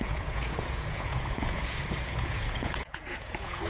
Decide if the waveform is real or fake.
fake